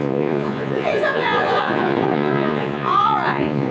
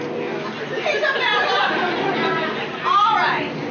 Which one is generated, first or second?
first